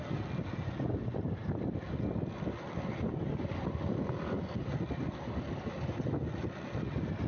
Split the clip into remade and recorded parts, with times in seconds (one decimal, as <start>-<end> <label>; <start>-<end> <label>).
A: 0.0-7.3 recorded